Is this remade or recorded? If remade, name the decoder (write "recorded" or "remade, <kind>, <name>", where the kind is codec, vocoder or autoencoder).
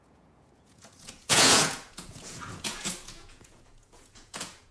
remade, vocoder, Vocos